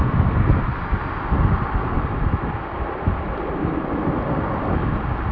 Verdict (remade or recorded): recorded